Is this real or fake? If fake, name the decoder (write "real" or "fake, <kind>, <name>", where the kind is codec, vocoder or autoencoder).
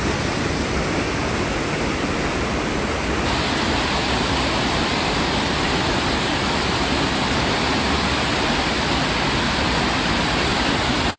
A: real